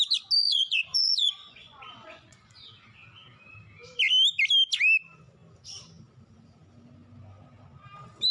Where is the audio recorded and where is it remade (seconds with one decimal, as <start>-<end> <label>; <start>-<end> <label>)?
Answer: 0.0-0.4 recorded; 0.4-2.7 remade; 2.7-8.3 recorded